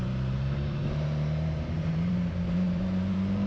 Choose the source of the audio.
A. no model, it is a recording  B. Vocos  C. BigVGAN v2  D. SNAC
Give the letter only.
C